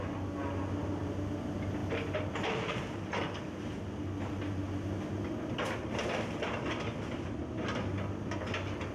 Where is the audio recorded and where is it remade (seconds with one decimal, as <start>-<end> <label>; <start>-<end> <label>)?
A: 0.0-8.9 recorded